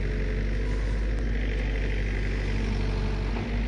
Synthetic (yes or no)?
no